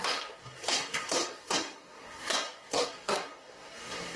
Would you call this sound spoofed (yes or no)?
yes